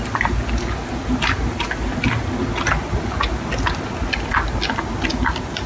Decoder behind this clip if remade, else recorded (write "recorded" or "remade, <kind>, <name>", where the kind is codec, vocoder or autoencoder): recorded